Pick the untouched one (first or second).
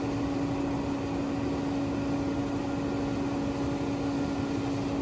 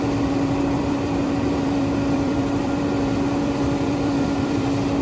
first